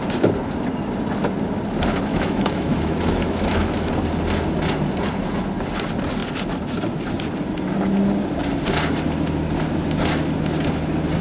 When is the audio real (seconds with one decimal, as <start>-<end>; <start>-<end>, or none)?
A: 0.0-2.1; 3.9-11.2

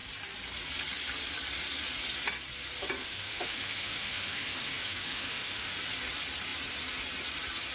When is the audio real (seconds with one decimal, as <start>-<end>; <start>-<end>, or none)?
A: 0.0-3.0; 5.7-7.7

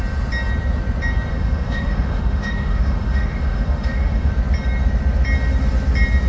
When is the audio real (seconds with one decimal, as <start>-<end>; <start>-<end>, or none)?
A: 0.0-1.3; 4.3-6.3